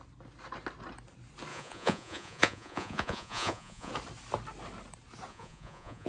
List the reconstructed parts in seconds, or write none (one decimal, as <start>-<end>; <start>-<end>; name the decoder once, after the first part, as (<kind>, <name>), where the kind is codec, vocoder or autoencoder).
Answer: 1.5-3.9 (vocoder, Vocos); 5.3-6.1